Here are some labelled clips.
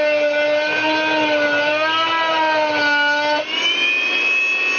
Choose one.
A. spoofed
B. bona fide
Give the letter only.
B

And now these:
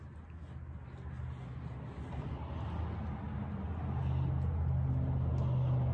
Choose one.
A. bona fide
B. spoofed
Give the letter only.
A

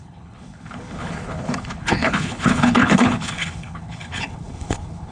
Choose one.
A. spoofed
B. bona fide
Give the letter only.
A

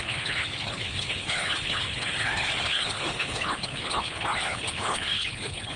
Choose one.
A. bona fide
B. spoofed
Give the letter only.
B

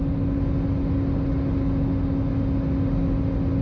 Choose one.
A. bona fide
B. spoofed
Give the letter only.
A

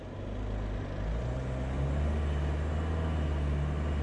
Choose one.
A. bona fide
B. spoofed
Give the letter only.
A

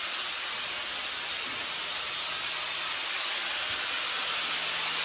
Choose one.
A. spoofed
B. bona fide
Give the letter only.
B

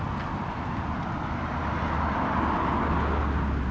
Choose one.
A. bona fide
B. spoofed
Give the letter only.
A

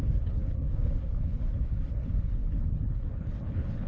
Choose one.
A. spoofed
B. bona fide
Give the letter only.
A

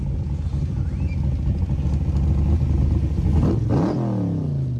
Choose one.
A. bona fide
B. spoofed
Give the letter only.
A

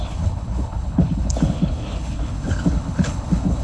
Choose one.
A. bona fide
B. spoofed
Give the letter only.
B